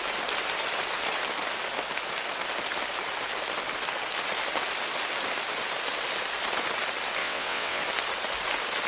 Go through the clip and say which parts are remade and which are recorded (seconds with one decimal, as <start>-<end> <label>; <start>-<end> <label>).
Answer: 0.0-7.2 recorded; 7.2-7.8 remade; 7.8-8.9 recorded